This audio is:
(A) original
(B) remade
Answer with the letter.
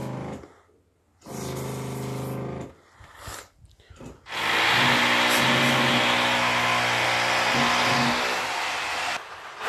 A